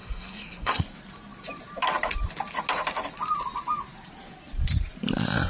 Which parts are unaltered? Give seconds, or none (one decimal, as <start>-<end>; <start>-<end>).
0.8-5.5